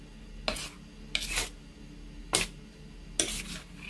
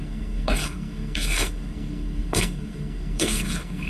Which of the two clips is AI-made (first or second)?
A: second